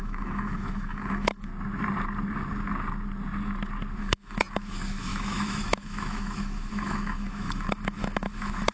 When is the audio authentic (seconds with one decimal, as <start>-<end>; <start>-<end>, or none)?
1.5-4.0

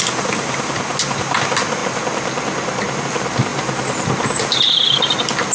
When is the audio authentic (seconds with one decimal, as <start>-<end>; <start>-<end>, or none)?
0.0-5.5

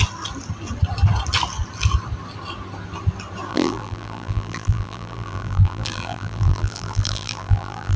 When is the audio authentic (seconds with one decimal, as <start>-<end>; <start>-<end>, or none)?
0.0-3.5

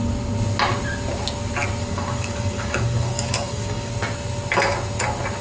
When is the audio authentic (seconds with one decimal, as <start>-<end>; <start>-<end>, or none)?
0.0-1.8; 3.9-5.4

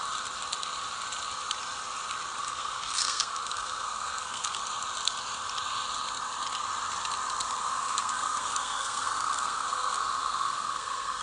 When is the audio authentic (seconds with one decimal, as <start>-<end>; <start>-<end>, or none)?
0.0-2.4; 4.6-7.6

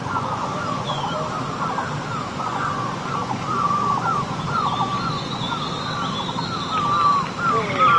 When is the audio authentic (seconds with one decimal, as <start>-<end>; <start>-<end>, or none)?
1.0-2.2; 5.5-8.0

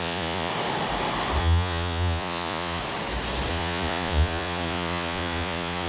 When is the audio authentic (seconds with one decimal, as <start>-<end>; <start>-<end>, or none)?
0.5-1.4; 2.8-3.5

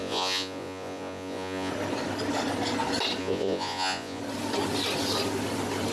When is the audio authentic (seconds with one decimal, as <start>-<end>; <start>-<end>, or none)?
1.7-3.2; 4.2-5.9